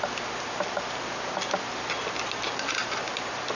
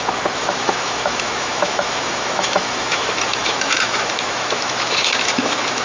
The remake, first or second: second